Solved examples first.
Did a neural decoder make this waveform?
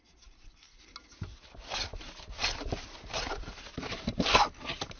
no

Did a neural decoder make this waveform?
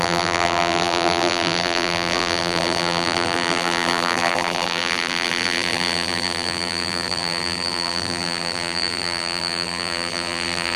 yes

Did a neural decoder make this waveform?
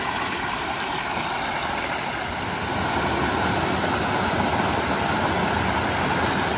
no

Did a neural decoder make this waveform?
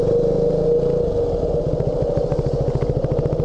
no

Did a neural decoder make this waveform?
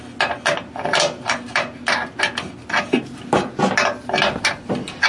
no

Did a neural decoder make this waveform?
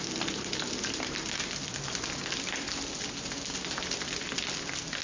no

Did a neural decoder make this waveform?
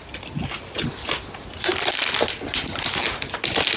no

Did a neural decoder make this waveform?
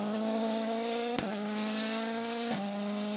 yes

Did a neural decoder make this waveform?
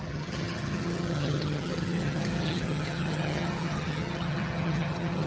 yes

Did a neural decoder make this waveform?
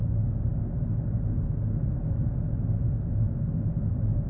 no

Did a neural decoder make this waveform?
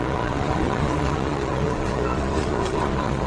yes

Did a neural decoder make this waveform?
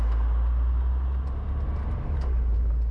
no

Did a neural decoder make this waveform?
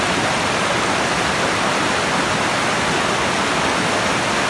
no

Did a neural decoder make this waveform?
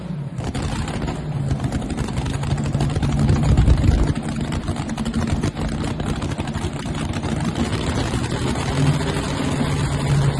no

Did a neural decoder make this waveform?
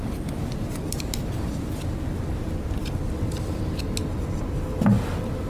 no